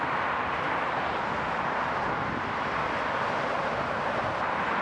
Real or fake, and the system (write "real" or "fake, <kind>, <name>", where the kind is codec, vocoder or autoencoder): real